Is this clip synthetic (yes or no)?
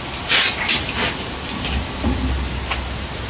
no